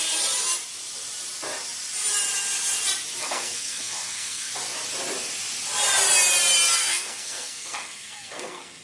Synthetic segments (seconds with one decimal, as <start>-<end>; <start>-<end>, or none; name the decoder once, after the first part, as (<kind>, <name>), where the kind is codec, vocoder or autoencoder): 3.2-4.5 (codec, SNAC); 6.8-8.8